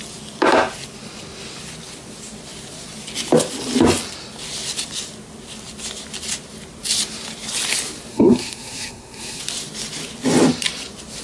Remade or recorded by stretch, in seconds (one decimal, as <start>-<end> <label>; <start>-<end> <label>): 0.0-8.1 recorded; 8.1-9.4 remade; 9.4-11.2 recorded